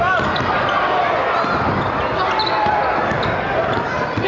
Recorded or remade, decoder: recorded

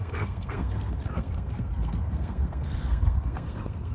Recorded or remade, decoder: remade, codec, SNAC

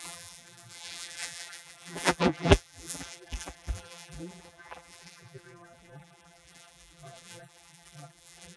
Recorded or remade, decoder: remade, vocoder, BigVGAN v2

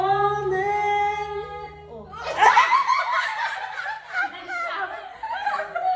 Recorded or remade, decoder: recorded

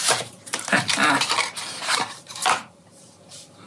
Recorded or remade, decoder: remade, vocoder, BigVGAN v2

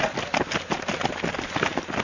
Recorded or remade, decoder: recorded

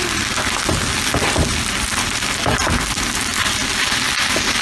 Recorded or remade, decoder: recorded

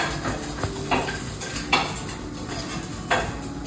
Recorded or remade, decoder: recorded